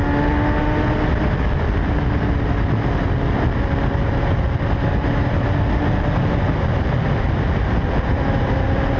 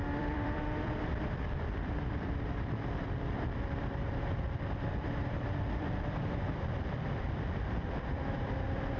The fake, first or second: second